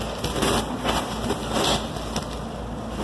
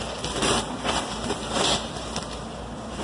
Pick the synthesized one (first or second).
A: second